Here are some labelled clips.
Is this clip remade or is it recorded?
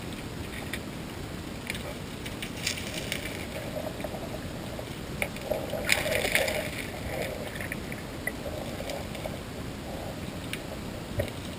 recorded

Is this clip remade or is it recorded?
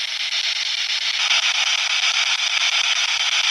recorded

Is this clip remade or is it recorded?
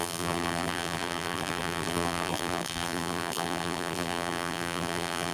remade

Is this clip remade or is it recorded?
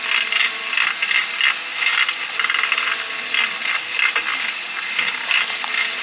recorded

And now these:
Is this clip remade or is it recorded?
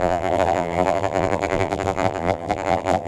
remade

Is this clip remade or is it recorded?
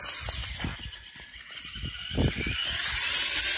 recorded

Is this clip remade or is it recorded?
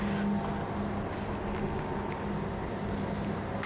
recorded